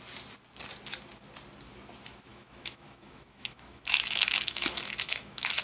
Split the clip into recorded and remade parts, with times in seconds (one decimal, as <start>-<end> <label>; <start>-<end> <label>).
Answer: 0.0-2.3 recorded; 2.3-5.6 remade